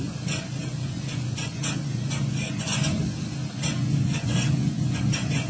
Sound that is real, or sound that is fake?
fake